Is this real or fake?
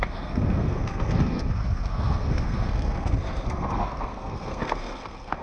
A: fake